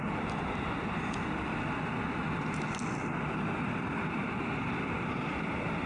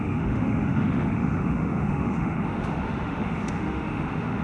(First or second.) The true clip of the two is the first